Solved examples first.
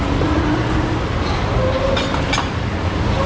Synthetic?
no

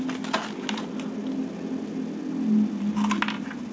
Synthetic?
no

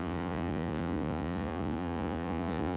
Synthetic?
yes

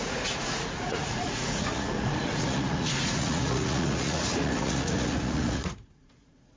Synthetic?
yes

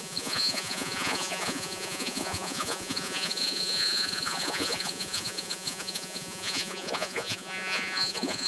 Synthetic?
yes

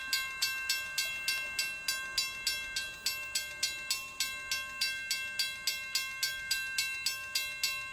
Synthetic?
no